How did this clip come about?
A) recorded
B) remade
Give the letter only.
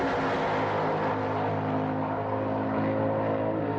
A